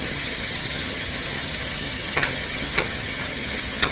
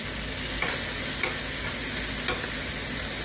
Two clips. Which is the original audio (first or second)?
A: second